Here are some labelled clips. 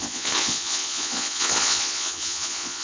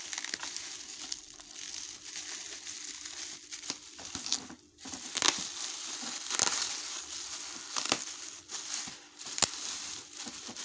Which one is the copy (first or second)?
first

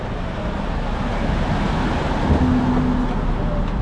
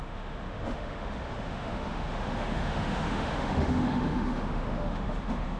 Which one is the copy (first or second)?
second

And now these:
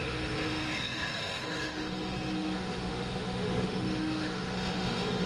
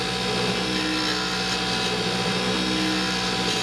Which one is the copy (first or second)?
first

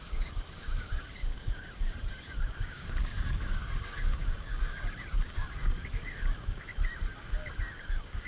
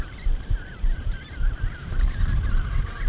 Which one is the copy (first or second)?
first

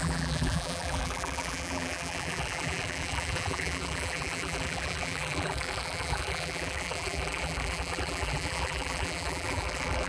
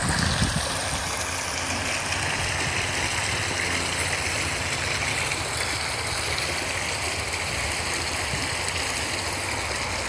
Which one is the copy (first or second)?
first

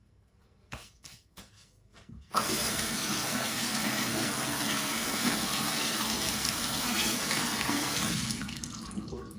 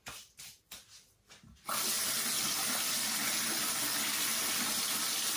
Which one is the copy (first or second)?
first